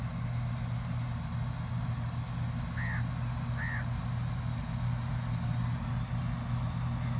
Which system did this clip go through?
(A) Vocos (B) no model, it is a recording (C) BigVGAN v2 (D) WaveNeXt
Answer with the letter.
B